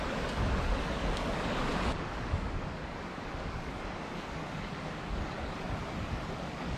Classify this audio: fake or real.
fake